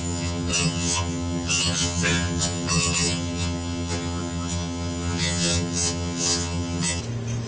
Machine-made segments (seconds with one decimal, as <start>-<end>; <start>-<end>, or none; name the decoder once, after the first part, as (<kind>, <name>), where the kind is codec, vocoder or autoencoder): 0.0-7.0 (vocoder, HiFi-GAN)